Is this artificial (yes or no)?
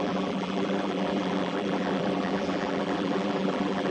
yes